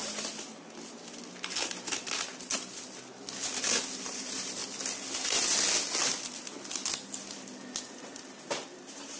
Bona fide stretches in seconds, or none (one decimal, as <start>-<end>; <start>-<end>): 0.0-4.0; 4.6-8.0